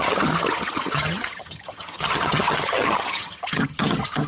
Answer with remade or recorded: remade